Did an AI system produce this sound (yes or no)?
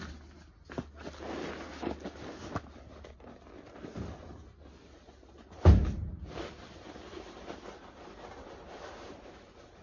no